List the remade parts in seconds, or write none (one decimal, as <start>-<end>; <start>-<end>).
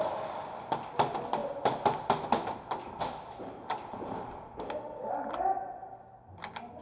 none